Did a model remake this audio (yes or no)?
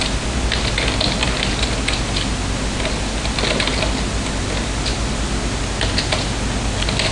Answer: no